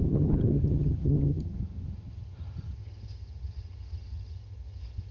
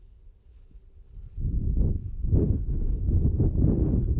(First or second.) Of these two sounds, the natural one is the second